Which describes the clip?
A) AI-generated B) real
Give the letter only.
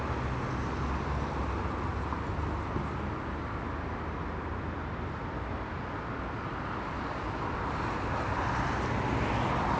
B